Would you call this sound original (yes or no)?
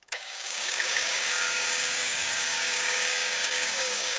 no